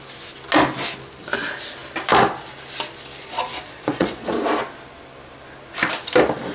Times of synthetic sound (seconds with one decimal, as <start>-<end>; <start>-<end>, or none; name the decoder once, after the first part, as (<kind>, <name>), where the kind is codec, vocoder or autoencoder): 3.2-4.3 (vocoder, Vocos)